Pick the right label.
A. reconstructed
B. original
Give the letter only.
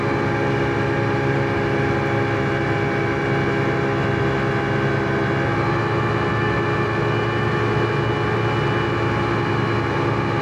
B